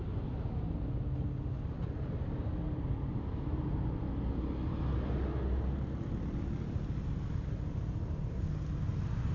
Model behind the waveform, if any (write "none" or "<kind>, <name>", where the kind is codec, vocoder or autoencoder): none